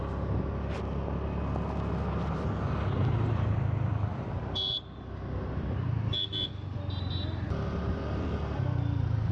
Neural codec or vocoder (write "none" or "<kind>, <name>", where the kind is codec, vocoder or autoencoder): none